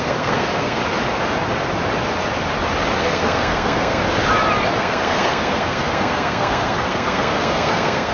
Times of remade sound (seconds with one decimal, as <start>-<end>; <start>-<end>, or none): 0.0-0.8; 3.0-4.0; 4.8-8.1